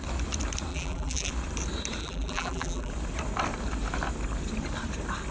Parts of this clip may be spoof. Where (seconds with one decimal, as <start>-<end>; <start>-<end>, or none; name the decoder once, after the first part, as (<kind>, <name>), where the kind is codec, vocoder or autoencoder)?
0.7-1.3 (vocoder, BigVGAN v2); 2.0-2.9